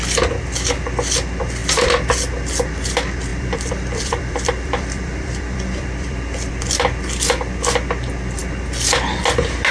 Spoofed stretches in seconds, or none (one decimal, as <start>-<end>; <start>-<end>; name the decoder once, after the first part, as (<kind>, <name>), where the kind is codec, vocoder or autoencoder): 3.3-6.5 (vocoder, BigVGAN v2)